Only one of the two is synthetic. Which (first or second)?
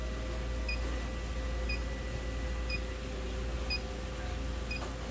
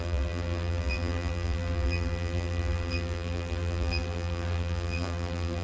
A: second